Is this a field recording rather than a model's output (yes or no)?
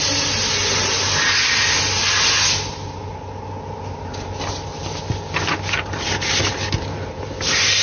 yes